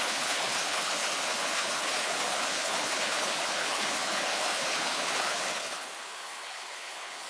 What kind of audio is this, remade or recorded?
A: remade